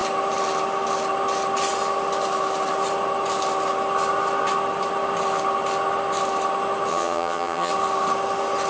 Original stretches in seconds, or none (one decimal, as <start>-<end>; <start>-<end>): 0.0-6.9; 7.7-8.7